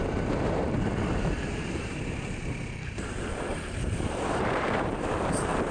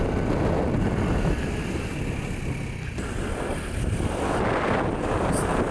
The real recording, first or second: second